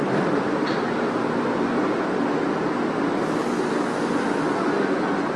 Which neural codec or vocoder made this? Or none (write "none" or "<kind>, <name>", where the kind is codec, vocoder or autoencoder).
none